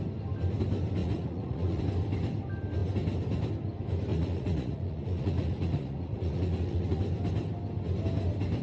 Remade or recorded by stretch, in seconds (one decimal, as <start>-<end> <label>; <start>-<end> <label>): 0.0-1.0 recorded; 1.0-1.8 remade; 1.8-4.1 recorded; 4.1-7.0 remade; 7.0-8.6 recorded